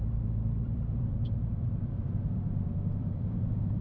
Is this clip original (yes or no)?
no